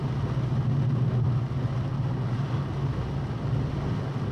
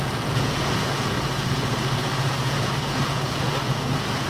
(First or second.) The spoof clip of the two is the second